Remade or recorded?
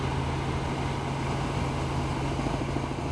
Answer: recorded